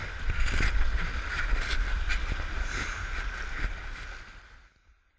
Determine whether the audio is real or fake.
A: real